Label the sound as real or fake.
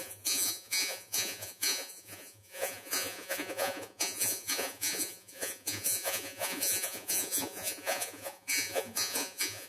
fake